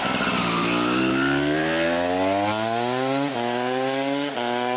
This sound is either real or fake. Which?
real